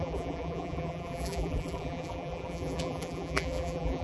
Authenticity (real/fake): fake